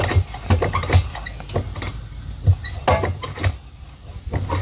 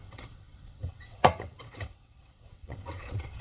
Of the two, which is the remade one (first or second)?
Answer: second